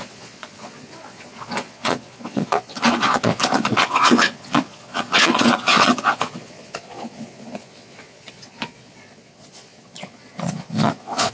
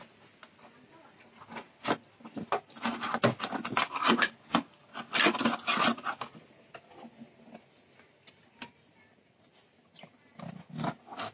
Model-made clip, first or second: first